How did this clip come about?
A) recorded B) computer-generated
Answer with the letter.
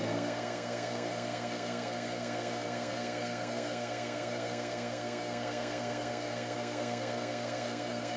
B